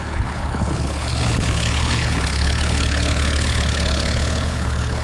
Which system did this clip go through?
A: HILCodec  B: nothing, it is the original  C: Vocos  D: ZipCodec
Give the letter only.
A